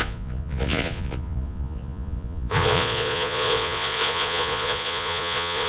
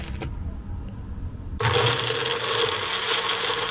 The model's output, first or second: first